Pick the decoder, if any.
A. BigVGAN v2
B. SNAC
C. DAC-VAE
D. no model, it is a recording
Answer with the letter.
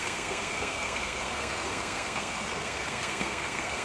B